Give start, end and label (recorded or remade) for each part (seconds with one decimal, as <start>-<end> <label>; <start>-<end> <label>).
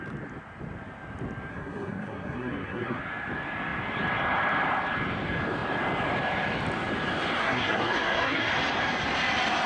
0.0-1.5 recorded; 1.5-3.0 remade; 3.0-7.4 recorded; 7.4-8.5 remade; 8.5-9.7 recorded